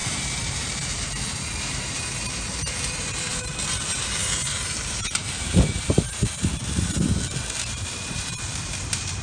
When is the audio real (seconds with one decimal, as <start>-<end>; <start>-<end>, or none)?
6.6-7.4